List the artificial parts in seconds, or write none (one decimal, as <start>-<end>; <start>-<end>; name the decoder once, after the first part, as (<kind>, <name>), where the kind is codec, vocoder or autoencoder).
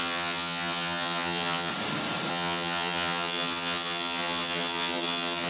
0.0-1.7 (vocoder, HiFi-GAN); 2.3-5.5